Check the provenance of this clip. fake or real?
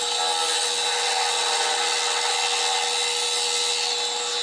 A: real